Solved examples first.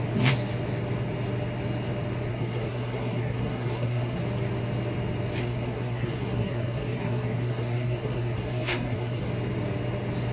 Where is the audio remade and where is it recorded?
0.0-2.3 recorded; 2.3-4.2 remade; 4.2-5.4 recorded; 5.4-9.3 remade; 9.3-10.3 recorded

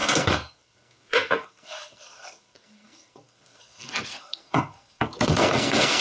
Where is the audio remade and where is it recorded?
0.0-6.0 remade

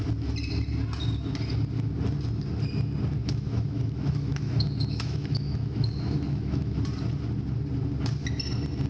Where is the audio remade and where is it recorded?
0.0-3.2 recorded; 3.2-6.8 remade; 6.8-8.9 recorded

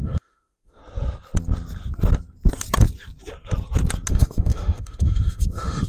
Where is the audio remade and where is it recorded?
0.0-0.8 remade; 0.8-4.1 recorded; 4.1-5.9 remade

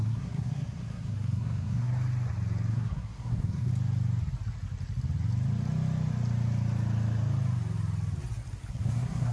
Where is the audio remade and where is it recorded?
0.0-1.9 remade; 1.9-2.7 recorded; 2.7-3.7 remade; 3.7-8.7 recorded; 8.7-9.3 remade

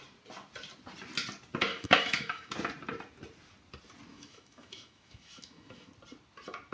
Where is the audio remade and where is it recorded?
0.0-1.7 recorded; 1.7-2.5 remade; 2.5-4.1 recorded; 4.1-5.9 remade; 5.9-6.7 recorded

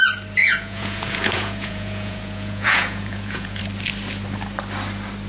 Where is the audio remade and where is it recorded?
0.0-0.4 recorded; 0.4-3.6 remade; 3.6-5.3 recorded